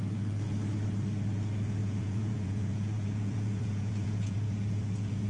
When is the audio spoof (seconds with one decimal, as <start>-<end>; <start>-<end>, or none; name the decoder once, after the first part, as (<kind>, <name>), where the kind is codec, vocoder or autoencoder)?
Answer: 1.8-5.3 (vocoder, Vocos)